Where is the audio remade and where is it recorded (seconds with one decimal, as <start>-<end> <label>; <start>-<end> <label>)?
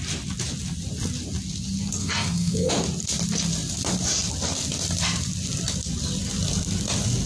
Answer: 0.0-2.0 recorded; 2.0-2.7 remade; 2.7-7.3 recorded